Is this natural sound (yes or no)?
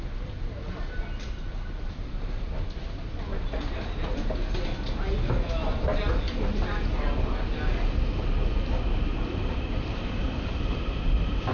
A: yes